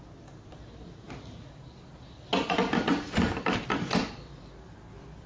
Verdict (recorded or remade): recorded